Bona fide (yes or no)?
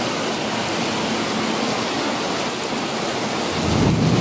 yes